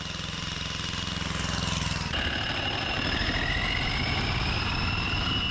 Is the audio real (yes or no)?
yes